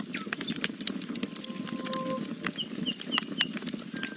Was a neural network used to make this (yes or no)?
no